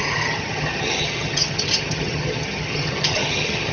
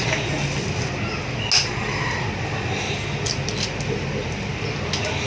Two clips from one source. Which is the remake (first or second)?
first